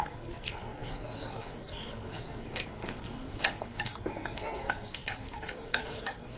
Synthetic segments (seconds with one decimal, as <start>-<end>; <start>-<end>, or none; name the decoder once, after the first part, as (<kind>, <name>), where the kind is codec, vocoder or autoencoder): 0.0-6.4 (codec, SNAC)